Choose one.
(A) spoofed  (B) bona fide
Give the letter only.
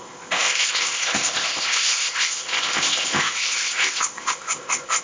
A